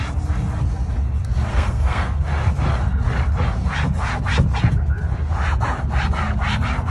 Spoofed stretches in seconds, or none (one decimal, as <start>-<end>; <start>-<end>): 1.5-2.2

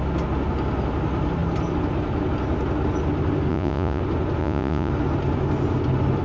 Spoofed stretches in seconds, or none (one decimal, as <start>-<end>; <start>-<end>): 3.5-4.0; 4.4-4.9

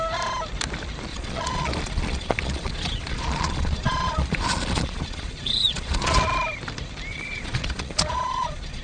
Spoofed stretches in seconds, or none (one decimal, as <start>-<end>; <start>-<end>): 1.1-6.2; 7.1-8.8

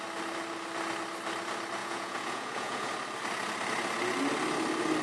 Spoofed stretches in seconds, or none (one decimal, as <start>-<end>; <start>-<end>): 1.8-2.9

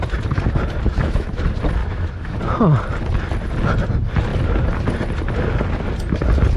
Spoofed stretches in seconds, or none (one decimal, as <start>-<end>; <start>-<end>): 0.9-1.4; 1.8-2.4